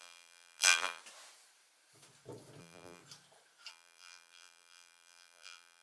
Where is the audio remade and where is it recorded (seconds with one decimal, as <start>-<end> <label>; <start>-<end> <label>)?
0.0-1.0 remade; 1.0-2.6 recorded; 2.6-3.0 remade; 3.0-3.7 recorded; 3.7-5.8 remade